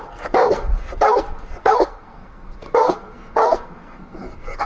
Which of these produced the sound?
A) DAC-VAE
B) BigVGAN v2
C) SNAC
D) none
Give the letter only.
C